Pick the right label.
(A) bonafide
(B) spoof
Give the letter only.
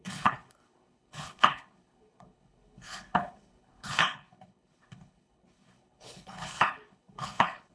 B